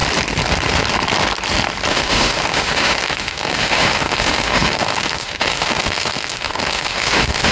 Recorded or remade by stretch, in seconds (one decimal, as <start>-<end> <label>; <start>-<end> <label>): 0.0-1.9 recorded; 1.9-7.5 remade